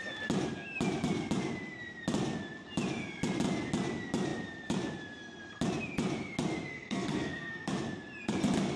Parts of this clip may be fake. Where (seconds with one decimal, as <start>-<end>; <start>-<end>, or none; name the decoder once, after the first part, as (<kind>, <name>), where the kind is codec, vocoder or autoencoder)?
6.7-7.7 (codec, SNAC)